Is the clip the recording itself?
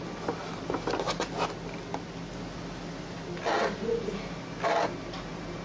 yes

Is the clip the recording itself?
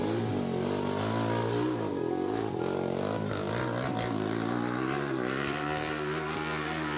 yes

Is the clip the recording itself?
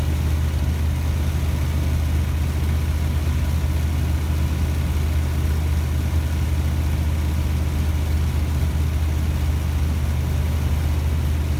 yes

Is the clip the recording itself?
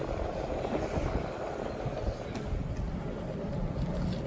yes